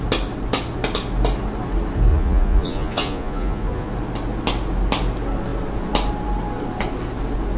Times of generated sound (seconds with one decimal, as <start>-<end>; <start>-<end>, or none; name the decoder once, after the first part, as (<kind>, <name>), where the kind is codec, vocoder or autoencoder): 2.1-3.9 (vocoder, Vocos)

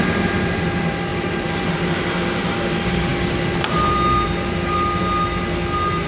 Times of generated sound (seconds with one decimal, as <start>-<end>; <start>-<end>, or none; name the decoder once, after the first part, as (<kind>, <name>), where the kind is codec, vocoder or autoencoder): 1.1-2.0 (vocoder, BigVGAN v2)

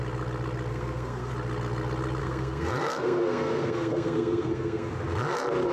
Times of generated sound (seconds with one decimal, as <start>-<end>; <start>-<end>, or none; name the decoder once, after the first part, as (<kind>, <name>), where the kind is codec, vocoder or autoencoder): 0.7-1.3 (codec, SNAC); 2.2-4.9

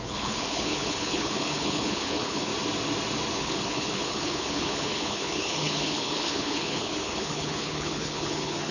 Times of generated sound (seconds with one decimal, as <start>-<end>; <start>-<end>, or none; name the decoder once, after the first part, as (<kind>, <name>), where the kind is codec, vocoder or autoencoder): 0.0-2.5 (codec, HILCodec); 3.3-8.7